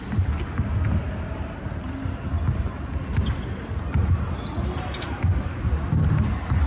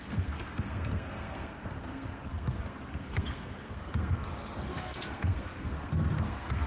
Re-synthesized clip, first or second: second